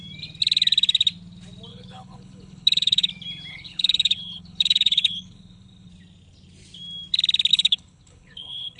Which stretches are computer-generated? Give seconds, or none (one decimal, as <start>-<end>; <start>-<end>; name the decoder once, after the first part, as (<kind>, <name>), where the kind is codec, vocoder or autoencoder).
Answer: 1.7-3.1 (codec, HILCodec); 3.5-5.9; 7.5-8.8